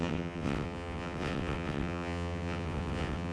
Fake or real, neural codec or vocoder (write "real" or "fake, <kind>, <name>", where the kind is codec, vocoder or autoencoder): fake, vocoder, WaveNeXt